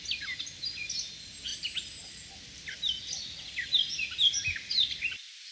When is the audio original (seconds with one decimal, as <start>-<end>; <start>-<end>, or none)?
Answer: 0.0-5.5